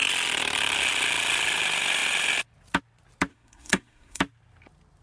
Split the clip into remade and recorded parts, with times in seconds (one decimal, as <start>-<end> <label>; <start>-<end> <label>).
0.0-3.3 recorded; 3.3-4.2 remade; 4.2-5.0 recorded